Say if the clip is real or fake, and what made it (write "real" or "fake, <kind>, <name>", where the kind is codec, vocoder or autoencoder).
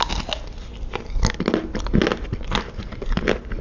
real